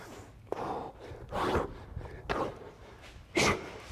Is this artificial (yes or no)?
no